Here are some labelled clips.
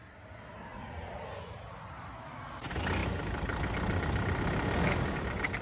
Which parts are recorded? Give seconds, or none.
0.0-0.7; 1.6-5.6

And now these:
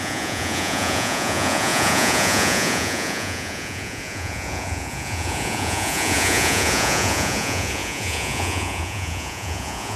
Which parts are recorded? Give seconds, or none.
none

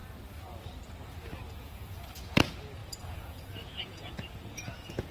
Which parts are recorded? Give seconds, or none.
0.0-1.5

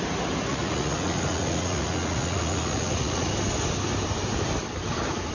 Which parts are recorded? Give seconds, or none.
0.0-0.5; 3.3-5.3